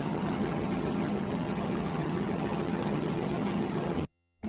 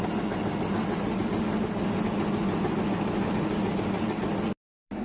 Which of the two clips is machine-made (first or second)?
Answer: first